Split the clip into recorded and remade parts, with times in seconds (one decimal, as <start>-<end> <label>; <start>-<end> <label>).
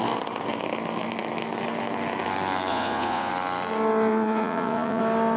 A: 0.0-2.7 recorded; 2.7-3.3 remade; 3.3-4.1 recorded; 4.1-5.0 remade; 5.0-5.4 recorded